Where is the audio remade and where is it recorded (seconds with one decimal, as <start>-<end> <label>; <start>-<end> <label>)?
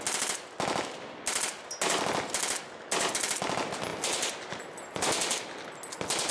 0.0-6.3 recorded